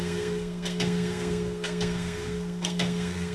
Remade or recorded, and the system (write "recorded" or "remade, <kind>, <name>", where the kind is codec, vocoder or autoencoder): remade, codec, SNAC